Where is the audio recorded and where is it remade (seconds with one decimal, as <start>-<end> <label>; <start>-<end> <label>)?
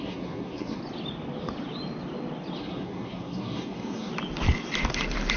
0.0-0.8 remade; 0.8-2.6 recorded; 2.6-4.1 remade; 4.1-5.4 recorded